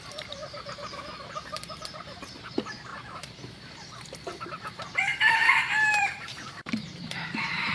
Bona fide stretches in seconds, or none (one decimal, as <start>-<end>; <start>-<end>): none